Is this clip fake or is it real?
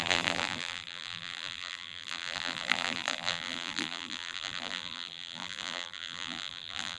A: fake